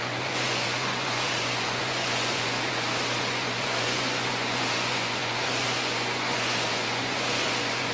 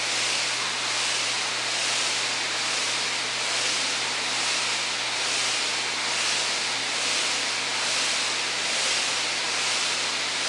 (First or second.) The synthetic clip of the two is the first